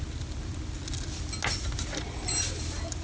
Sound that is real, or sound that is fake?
real